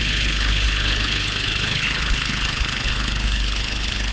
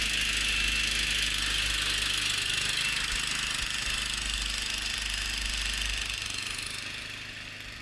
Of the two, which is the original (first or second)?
second